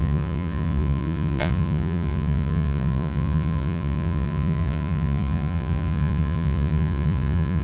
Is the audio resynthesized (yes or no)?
yes